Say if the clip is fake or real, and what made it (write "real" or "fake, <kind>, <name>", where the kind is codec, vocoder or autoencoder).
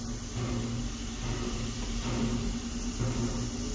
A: real